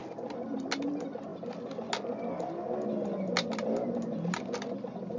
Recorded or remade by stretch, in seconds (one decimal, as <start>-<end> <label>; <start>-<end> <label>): 0.0-5.2 recorded